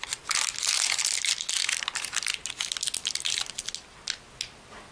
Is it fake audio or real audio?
real